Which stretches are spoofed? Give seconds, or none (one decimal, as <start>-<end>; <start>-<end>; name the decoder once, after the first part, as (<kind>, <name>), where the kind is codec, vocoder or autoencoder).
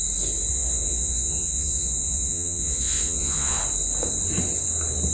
0.5-3.6 (vocoder, Vocos)